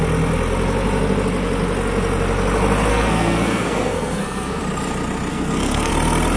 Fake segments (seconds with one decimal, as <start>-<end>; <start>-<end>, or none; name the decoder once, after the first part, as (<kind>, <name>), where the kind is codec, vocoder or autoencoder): 2.9-4.6 (codec, SNAC); 5.3-5.9